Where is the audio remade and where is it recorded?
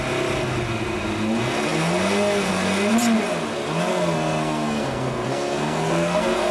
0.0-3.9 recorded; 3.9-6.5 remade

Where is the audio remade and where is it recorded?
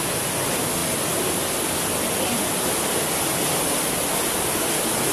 0.0-5.1 recorded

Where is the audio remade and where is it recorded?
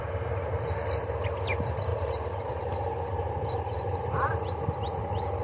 0.0-1.9 recorded; 1.9-5.0 remade; 5.0-5.4 recorded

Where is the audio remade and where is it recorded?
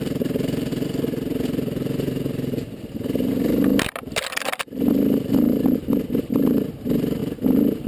0.0-0.7 remade; 0.7-3.3 recorded; 3.3-3.7 remade; 3.7-6.2 recorded; 6.2-7.2 remade; 7.2-7.9 recorded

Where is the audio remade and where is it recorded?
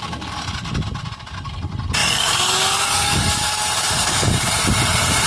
0.0-2.0 recorded; 2.0-4.5 remade; 4.5-5.3 recorded